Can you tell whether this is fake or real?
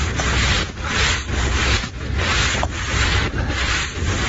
real